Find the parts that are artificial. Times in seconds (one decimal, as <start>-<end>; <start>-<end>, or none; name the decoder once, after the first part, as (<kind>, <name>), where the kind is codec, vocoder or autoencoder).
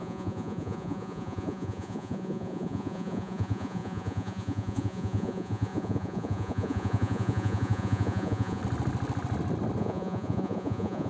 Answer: 0.0-8.6 (vocoder, Vocos); 9.8-11.1